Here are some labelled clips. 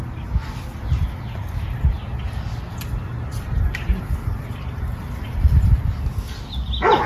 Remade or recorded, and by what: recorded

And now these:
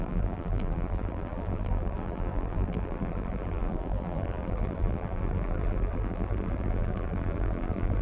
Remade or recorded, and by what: remade, vocoder, BigVGAN v2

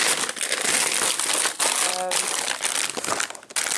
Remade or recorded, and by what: recorded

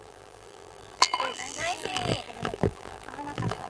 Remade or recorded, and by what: remade, vocoder, BigVGAN v2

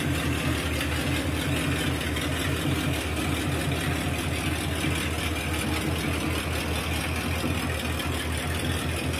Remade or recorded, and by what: recorded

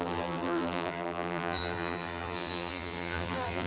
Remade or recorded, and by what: remade, vocoder, BigVGAN v2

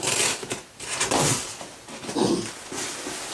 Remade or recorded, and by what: recorded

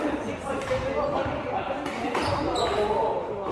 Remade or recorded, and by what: recorded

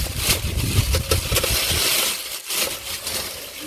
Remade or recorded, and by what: recorded